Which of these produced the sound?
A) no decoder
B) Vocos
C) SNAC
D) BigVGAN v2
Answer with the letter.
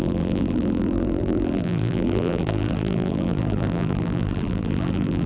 D